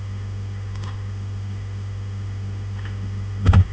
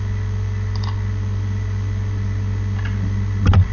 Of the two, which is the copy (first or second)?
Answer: first